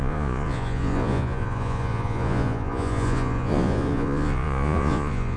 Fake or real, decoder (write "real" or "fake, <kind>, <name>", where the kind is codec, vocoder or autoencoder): fake, vocoder, Vocos